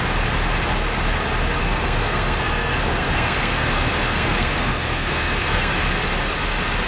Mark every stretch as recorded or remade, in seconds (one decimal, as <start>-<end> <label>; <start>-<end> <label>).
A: 0.0-1.6 recorded; 1.6-5.7 remade; 5.7-6.9 recorded